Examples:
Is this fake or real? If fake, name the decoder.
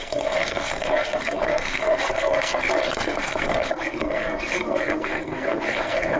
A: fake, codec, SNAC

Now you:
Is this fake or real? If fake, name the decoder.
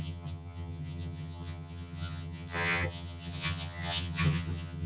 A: fake, vocoder, HiFi-GAN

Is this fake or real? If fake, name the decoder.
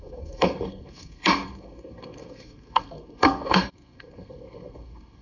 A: fake, codec, SNAC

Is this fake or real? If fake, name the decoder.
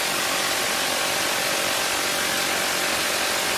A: real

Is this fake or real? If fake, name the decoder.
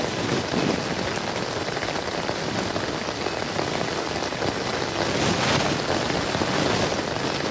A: real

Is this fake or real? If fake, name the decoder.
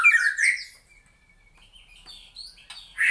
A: real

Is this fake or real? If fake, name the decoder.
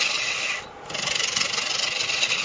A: real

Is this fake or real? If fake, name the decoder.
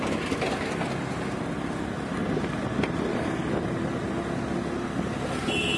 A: real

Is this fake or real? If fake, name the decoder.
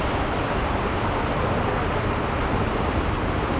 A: real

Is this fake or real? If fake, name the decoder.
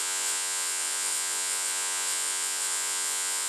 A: fake, vocoder, Vocos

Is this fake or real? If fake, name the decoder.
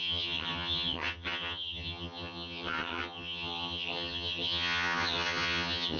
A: fake, vocoder, HiFi-GAN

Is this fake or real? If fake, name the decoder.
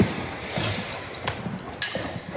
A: fake, vocoder, BigVGAN v2